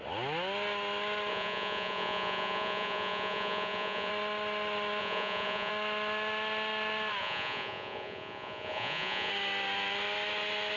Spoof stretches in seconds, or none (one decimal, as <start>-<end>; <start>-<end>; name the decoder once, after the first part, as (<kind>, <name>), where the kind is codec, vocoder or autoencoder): 1.3-4.1 (vocoder, Vocos); 5.0-5.7; 7.2-9.3